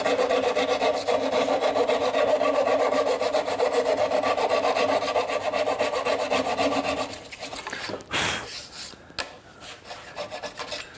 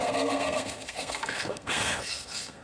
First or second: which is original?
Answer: first